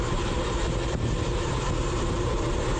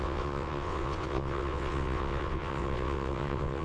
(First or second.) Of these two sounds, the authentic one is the first